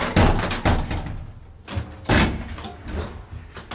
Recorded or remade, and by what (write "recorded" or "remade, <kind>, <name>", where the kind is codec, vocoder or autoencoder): recorded